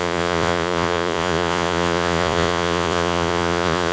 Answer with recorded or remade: remade